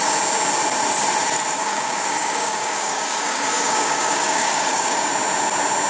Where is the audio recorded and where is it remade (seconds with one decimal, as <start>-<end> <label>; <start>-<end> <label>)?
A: 0.0-1.6 recorded; 1.6-5.1 remade; 5.1-5.9 recorded